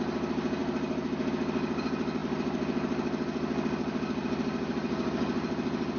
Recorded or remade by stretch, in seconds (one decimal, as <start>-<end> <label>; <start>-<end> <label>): 0.0-6.0 recorded